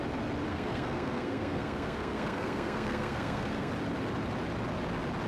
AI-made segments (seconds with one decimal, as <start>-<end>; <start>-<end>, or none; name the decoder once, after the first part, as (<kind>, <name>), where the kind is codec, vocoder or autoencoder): 0.5-3.7 (codec, SNAC)